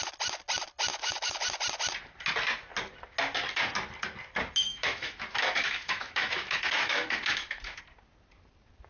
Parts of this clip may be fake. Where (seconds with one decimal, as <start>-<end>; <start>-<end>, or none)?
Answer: 0.9-1.4; 4.7-7.8